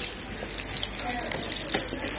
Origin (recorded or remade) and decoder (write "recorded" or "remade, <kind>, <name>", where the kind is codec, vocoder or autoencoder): recorded